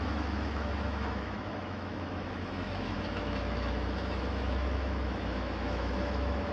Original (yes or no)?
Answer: no